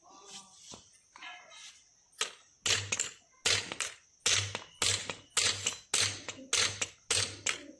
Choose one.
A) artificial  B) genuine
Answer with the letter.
B